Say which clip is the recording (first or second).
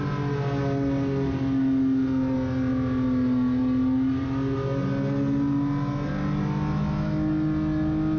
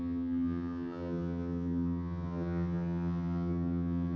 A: first